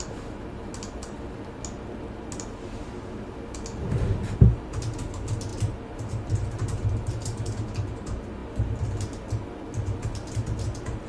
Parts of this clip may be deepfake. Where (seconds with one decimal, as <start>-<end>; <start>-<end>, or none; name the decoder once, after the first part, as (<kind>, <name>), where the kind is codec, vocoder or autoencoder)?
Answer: 5.5-7.1 (vocoder, BigVGAN v2); 8.4-9.3